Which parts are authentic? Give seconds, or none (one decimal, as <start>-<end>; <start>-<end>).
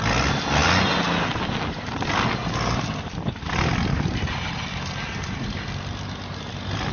0.0-6.9